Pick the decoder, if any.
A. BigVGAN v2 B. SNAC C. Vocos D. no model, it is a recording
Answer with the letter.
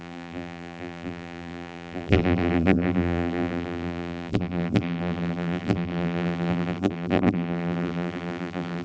A